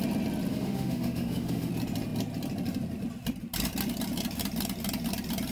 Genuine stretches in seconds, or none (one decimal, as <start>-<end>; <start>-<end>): 0.0-0.5; 1.7-5.5